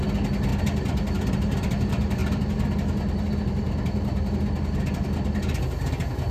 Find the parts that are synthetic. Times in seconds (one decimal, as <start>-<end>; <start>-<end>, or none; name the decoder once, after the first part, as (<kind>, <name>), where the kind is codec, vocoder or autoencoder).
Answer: none